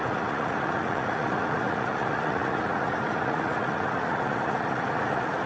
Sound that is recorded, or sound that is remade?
remade